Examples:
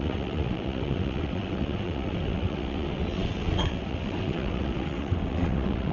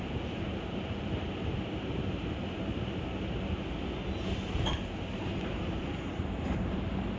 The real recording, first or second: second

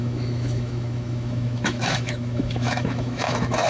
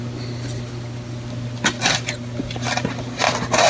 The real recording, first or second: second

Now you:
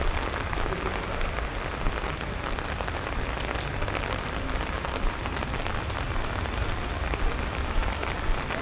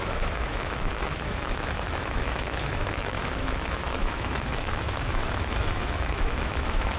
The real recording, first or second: first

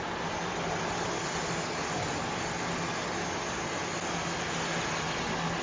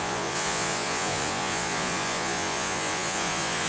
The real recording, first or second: first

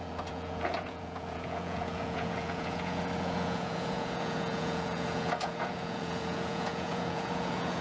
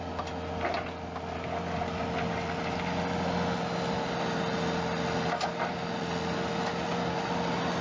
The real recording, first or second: second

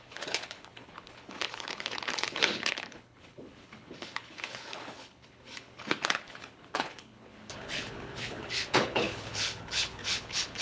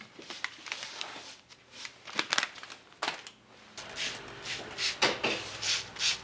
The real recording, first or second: second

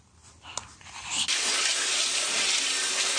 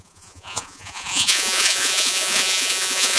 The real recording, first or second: first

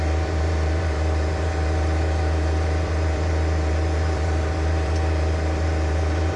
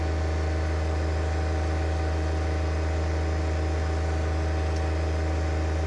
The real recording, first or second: second